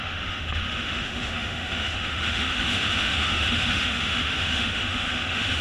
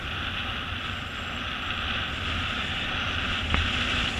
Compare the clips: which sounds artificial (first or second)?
first